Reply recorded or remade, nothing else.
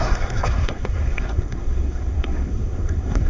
remade